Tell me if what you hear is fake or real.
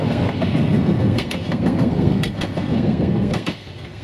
fake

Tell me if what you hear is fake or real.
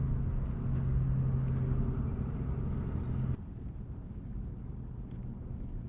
real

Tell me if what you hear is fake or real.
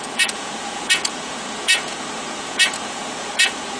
fake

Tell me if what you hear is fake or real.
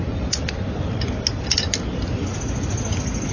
real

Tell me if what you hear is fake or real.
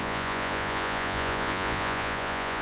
fake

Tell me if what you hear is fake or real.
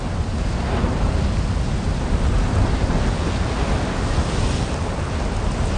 real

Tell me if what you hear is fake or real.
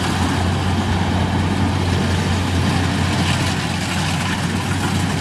real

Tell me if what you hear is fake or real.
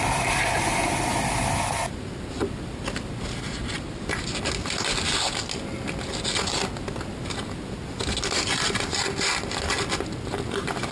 real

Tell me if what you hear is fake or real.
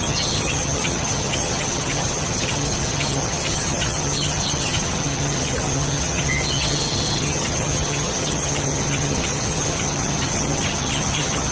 fake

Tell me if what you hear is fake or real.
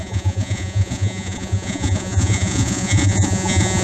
fake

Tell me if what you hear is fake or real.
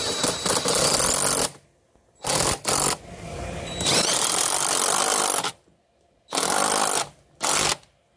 real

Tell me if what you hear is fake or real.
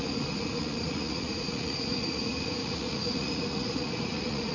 fake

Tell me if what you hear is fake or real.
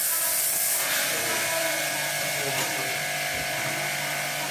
real